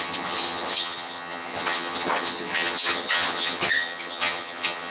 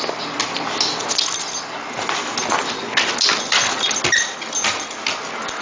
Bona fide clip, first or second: second